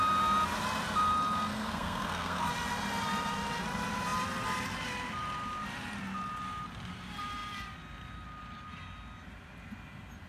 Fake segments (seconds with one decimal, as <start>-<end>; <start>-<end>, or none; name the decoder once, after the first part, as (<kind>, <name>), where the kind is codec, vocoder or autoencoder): 1.5-2.5 (codec, SNAC)